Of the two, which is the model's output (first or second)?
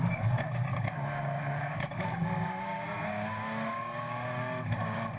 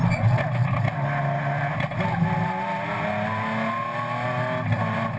first